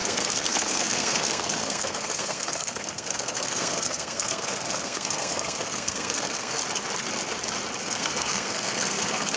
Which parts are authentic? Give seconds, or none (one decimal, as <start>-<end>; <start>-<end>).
6.6-7.8